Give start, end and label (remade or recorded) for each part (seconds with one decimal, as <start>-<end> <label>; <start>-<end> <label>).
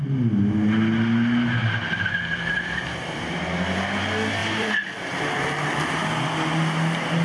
0.0-1.6 recorded; 1.6-3.3 remade; 3.3-4.4 recorded; 4.4-5.6 remade; 5.6-7.2 recorded